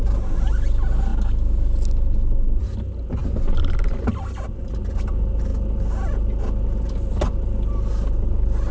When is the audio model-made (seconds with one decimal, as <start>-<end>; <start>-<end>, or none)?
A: none